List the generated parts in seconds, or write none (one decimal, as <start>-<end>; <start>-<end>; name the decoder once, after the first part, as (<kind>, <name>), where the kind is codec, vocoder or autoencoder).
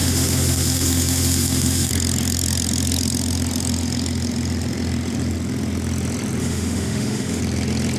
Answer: 0.0-1.9 (autoencoder, DAC-VAE); 6.4-7.4